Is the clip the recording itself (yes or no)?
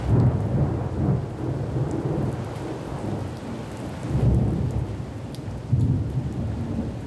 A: yes